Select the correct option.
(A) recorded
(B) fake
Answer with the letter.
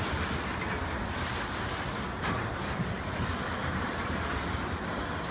A